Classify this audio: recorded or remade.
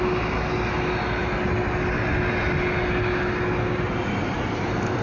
recorded